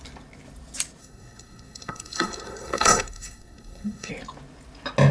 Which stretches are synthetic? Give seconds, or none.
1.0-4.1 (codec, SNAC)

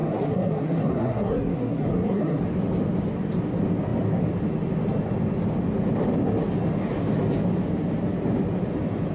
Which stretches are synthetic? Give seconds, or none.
0.0-2.4 (codec, SNAC)